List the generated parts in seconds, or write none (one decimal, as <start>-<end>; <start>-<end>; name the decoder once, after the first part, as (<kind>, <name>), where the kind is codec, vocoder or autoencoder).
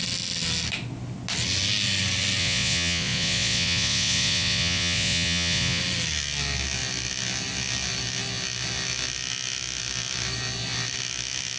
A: 2.4-5.8 (vocoder, Vocos)